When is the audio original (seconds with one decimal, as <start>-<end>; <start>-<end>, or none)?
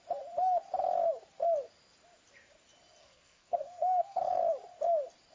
0.0-3.0; 4.4-5.3